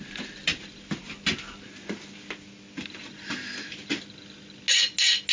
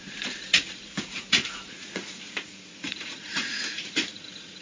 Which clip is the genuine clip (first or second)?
first